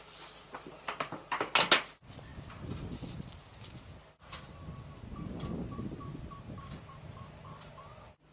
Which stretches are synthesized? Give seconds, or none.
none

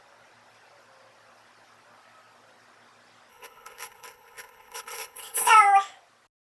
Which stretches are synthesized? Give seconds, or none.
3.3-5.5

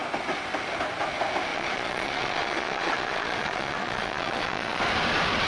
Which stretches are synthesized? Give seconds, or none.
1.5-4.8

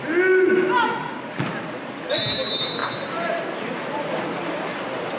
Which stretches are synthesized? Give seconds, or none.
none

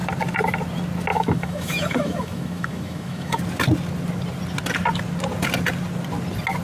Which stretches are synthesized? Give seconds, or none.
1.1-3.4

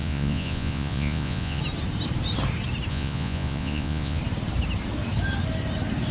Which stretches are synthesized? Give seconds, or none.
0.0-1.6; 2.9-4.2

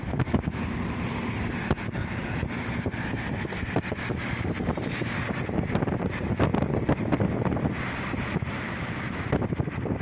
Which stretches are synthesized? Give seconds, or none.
6.5-8.1

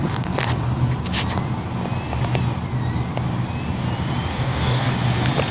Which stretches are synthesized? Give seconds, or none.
4.3-4.9